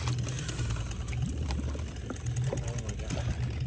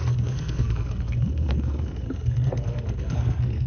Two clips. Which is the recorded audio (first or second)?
first